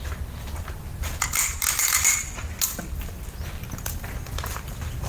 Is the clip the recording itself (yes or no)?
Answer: yes